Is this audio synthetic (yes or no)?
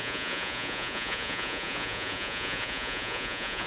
yes